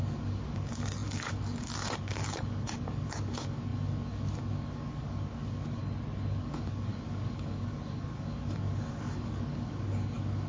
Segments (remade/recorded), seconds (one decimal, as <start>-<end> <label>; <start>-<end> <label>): 0.0-5.8 remade; 5.8-6.4 recorded; 6.4-10.5 remade